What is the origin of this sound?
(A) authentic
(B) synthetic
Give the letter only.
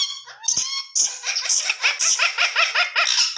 A